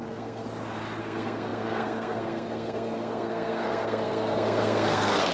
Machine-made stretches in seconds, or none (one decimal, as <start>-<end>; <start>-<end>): 0.0-0.4; 1.0-5.3